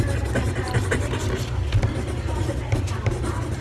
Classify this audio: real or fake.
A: real